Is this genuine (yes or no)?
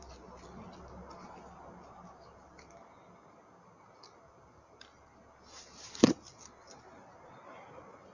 yes